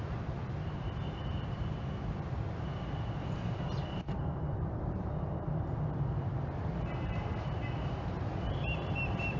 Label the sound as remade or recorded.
remade